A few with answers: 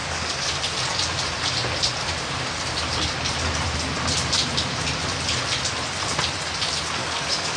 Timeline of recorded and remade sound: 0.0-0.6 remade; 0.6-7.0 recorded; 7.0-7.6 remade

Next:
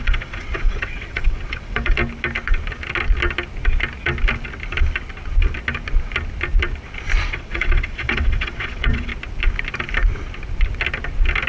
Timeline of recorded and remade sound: 0.0-2.0 remade; 2.0-7.2 recorded; 7.2-9.1 remade; 9.1-11.5 recorded

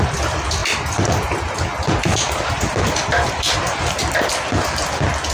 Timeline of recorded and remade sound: 0.0-5.3 recorded

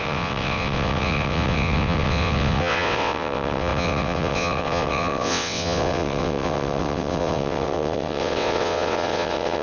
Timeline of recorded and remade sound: 0.0-9.6 remade

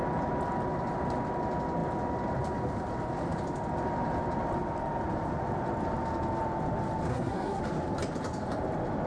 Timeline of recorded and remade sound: 0.0-7.1 recorded; 7.1-7.6 remade; 7.6-9.1 recorded

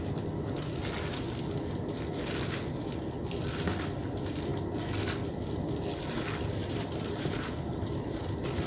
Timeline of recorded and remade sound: 0.0-6.6 recorded; 6.6-8.2 remade; 8.2-8.7 recorded

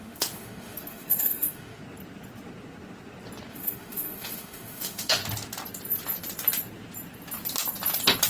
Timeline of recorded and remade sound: 0.0-1.8 remade; 1.8-3.5 recorded; 3.5-5.2 remade; 5.2-8.3 recorded